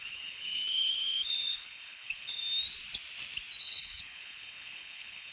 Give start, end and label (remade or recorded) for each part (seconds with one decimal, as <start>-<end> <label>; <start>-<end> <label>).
0.0-2.4 remade; 2.4-3.6 recorded; 3.6-5.3 remade